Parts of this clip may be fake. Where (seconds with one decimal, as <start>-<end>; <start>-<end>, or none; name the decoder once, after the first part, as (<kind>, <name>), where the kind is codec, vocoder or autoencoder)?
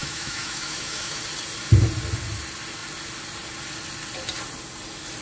0.0-1.2 (autoencoder, DAC-VAE)